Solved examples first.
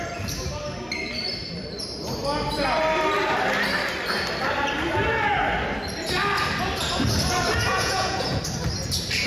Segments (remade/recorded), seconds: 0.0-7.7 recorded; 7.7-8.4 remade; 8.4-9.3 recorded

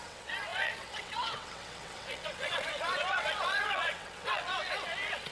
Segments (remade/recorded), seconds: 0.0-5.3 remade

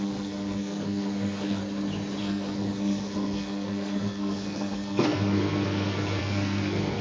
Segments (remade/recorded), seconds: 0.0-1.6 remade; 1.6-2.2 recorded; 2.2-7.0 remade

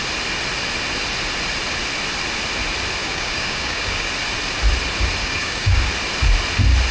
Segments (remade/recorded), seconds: 0.0-3.0 recorded; 3.0-4.1 remade; 4.1-5.2 recorded; 5.2-5.9 remade; 5.9-6.9 recorded